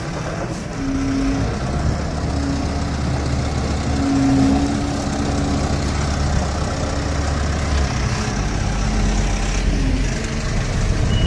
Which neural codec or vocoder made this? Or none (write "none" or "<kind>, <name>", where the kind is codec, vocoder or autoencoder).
none